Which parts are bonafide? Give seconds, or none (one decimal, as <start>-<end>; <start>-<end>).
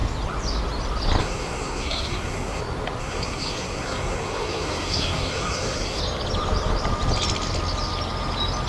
0.0-1.2; 2.6-3.0; 6.0-8.7